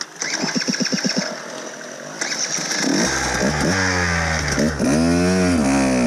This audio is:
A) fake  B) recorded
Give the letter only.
B